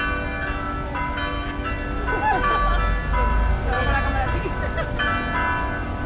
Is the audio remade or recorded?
recorded